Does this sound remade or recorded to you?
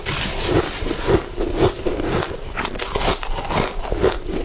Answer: recorded